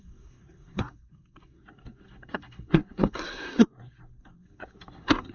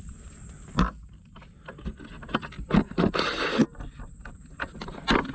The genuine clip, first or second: second